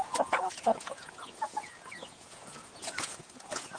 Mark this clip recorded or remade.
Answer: remade